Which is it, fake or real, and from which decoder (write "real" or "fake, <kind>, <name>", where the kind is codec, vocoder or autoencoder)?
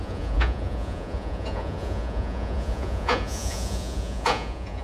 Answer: fake, vocoder, Vocos